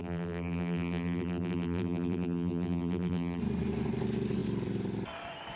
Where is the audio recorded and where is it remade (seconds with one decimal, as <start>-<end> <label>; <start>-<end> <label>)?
0.0-3.4 remade; 3.4-5.6 recorded